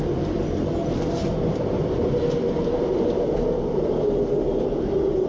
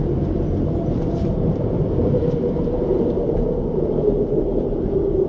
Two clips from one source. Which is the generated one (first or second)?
second